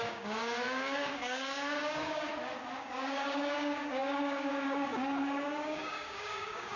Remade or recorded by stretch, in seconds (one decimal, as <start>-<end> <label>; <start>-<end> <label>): 0.0-2.3 remade; 2.3-2.8 recorded; 2.8-6.8 remade